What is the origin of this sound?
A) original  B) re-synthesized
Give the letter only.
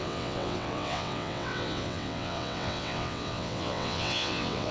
B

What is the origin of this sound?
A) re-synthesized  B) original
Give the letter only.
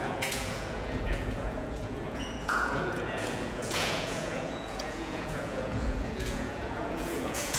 A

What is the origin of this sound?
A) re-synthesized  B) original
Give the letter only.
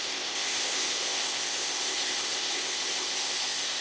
A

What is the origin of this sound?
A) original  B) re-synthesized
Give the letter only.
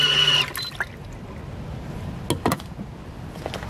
A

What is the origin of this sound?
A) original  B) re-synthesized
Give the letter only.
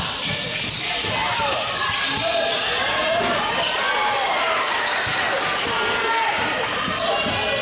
A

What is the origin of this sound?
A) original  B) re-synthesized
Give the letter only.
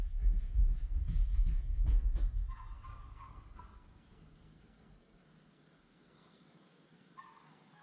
B